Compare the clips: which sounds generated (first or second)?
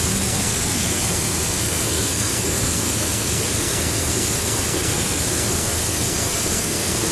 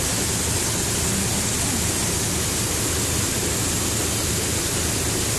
first